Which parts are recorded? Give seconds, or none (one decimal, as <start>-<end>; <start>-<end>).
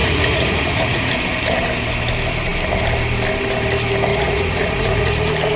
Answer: 1.1-4.1; 5.1-5.6